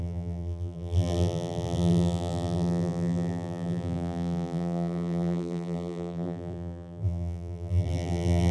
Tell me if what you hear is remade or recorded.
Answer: remade